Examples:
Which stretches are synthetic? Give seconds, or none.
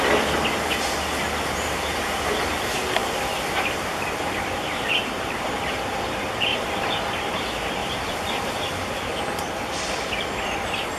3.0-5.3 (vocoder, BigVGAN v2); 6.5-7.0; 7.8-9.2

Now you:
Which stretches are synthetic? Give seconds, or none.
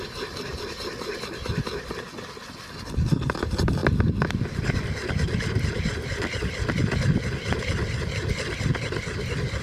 none